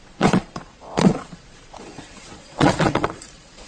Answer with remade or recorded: remade